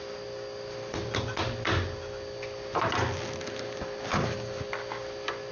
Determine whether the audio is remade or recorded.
recorded